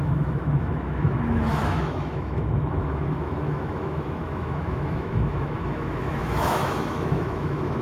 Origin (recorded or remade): remade